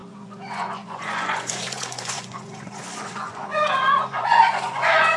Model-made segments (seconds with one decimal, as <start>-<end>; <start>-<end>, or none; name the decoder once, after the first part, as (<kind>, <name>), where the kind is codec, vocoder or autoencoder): 0.0-5.2 (vocoder, Vocos)